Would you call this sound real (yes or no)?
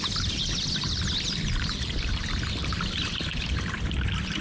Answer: yes